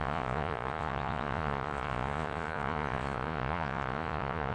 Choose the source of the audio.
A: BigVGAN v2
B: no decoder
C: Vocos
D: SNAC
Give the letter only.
C